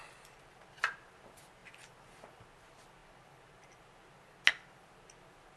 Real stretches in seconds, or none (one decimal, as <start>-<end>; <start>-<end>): 0.0-5.6